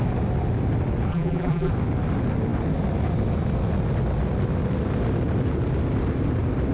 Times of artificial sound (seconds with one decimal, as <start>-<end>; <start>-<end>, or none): 1.1-1.7